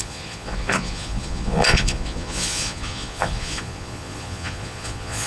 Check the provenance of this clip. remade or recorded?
remade